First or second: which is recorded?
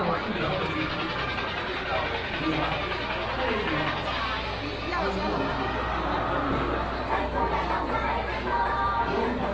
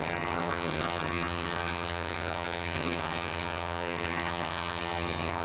first